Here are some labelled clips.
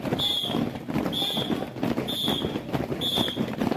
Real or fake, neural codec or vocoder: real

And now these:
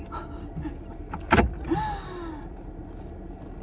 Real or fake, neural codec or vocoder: real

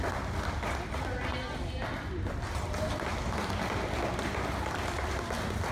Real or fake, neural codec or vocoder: real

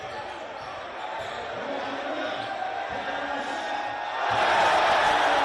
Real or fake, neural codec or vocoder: real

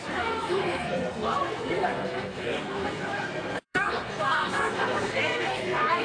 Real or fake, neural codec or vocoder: fake, codec, SNAC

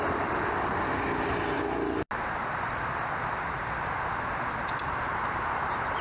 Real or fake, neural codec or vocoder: real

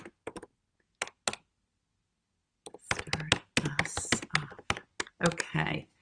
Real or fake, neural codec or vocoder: real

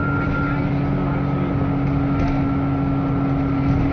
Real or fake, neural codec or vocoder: real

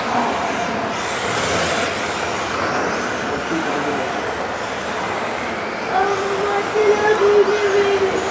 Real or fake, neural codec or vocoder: real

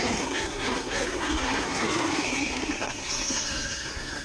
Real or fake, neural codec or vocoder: fake, codec, SNAC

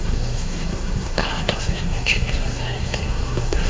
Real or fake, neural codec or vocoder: fake, codec, SNAC